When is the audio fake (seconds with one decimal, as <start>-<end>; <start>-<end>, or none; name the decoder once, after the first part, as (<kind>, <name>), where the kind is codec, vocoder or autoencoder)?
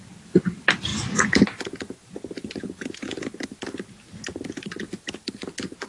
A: none